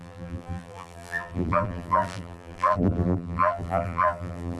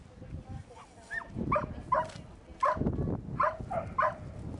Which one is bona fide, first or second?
second